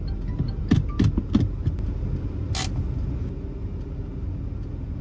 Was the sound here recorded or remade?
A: recorded